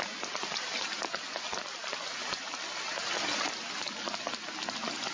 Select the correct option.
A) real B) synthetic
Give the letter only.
A